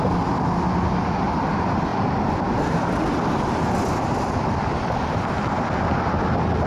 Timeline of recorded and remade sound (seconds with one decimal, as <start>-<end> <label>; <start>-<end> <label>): 0.0-6.7 recorded